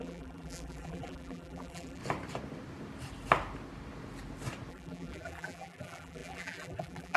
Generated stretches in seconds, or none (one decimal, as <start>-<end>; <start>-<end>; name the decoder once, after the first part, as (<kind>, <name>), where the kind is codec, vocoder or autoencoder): 0.0-2.0 (vocoder, BigVGAN v2); 4.7-7.2